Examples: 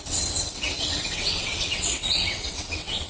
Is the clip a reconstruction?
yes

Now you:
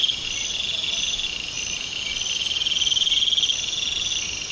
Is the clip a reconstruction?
no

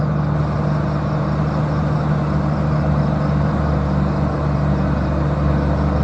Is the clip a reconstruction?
no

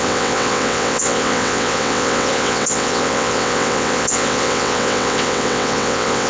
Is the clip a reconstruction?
yes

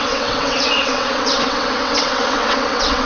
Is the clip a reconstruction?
yes